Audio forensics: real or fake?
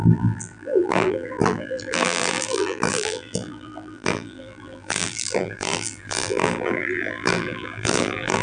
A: fake